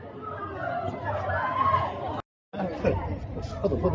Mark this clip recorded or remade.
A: recorded